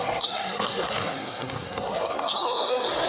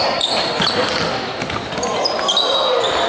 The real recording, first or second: second